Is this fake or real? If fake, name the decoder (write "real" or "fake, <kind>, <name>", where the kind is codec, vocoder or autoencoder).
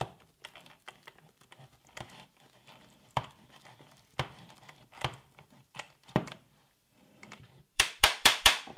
fake, vocoder, BigVGAN v2